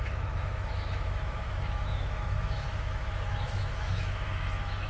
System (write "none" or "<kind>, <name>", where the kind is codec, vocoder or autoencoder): autoencoder, DAC-VAE